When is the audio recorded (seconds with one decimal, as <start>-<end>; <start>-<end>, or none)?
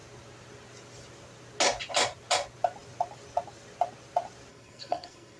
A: 0.0-4.5